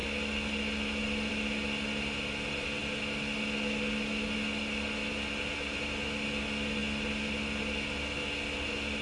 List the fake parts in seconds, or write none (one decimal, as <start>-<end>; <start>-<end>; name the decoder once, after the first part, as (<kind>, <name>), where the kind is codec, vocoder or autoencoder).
none